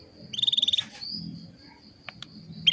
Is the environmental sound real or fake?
real